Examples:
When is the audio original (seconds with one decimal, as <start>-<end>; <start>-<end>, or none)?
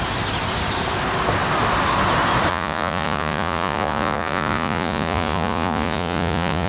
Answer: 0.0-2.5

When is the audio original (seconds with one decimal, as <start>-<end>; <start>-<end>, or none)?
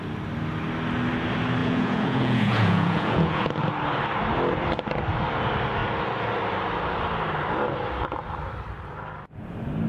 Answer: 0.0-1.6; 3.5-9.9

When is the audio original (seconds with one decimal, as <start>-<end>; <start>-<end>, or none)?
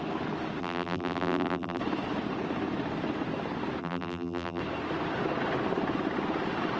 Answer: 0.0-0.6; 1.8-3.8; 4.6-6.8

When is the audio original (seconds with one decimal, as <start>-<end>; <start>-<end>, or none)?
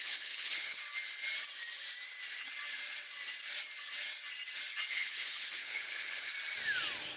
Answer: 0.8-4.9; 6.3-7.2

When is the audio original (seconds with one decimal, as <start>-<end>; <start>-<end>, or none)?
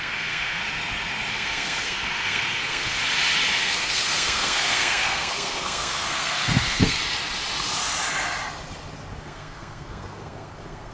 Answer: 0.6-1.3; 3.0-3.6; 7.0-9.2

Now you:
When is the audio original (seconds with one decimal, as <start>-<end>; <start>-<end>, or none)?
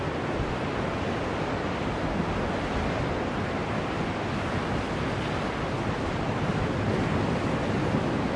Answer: 0.0-8.4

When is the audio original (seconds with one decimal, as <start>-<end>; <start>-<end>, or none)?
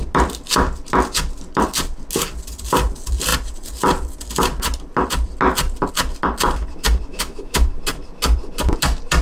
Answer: 0.0-7.1; 7.7-9.2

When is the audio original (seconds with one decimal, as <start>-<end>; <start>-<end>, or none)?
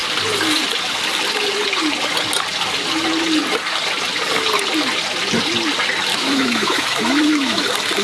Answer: 0.0-6.1; 7.6-8.0